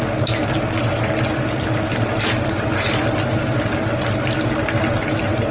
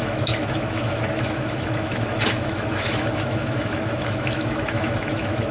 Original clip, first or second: first